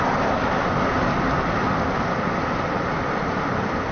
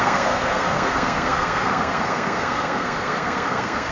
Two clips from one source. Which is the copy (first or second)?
second